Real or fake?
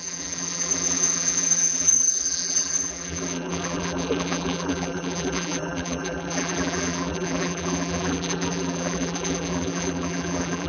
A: fake